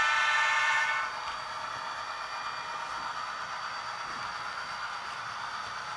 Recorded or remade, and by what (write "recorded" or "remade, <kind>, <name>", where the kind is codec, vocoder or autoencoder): recorded